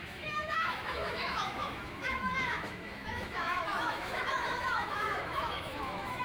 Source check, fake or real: fake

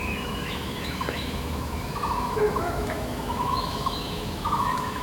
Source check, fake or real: fake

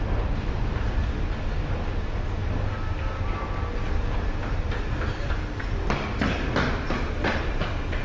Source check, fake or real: real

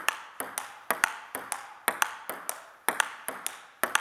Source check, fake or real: real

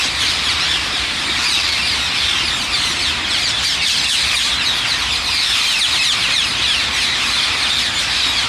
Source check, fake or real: real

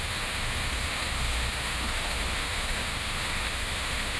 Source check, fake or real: fake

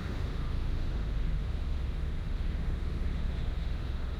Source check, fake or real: fake